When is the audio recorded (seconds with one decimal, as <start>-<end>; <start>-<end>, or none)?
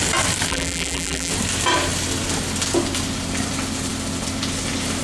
0.0-0.5; 1.3-5.0